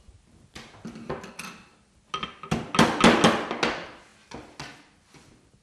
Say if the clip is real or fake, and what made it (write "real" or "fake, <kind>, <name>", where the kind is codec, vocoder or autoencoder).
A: real